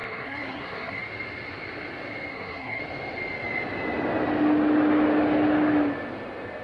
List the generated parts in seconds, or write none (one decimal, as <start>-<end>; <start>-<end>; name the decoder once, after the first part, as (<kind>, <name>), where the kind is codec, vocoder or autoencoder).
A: 0.0-1.0 (codec, SNAC); 2.3-2.8